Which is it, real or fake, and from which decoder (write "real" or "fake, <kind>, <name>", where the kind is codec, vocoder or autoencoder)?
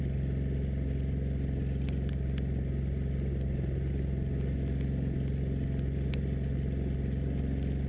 real